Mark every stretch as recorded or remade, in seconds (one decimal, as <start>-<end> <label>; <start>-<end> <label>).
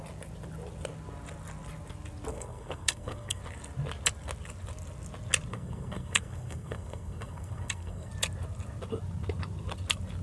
0.0-2.3 recorded; 2.3-3.4 remade; 3.4-5.5 recorded; 5.5-8.1 remade; 8.1-10.2 recorded